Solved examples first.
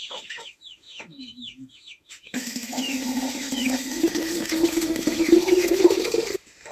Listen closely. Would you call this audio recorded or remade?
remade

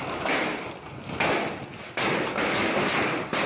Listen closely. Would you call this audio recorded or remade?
recorded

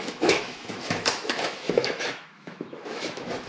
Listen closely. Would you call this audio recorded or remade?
remade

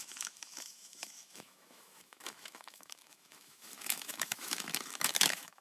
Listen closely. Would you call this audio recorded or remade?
remade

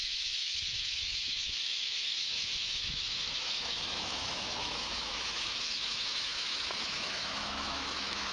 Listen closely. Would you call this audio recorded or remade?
remade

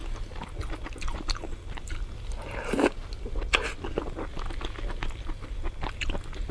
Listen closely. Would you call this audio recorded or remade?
recorded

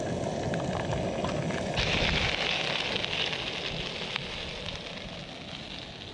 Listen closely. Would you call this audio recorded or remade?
recorded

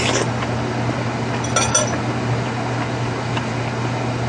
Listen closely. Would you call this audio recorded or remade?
recorded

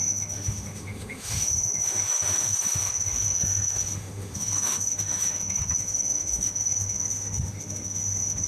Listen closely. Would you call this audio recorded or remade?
remade